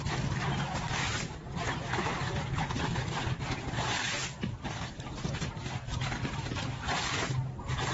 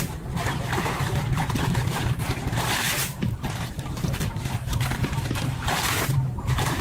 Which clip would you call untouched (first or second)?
first